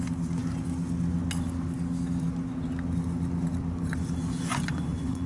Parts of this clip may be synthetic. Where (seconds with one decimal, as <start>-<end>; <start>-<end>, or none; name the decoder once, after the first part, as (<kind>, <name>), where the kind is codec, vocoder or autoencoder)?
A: 4.5-5.3 (vocoder, Vocos)